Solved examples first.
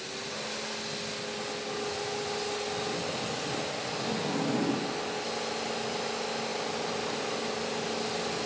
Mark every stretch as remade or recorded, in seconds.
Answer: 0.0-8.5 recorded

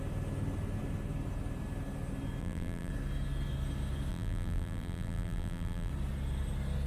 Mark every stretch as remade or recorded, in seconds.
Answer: 0.0-2.4 recorded; 2.4-2.9 remade; 2.9-4.1 recorded; 4.1-5.9 remade; 5.9-6.9 recorded